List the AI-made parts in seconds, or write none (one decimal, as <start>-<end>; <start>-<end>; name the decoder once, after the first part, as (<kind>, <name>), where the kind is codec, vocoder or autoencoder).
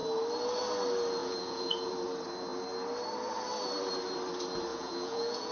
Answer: 1.2-1.9 (vocoder, Vocos); 4.7-5.5